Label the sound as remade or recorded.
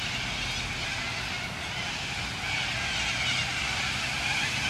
recorded